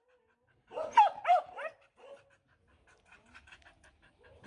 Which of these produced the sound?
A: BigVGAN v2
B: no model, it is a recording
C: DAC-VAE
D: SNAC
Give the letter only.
B